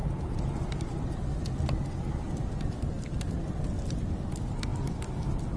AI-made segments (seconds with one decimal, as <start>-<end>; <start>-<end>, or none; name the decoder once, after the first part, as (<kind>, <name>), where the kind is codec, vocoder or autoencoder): none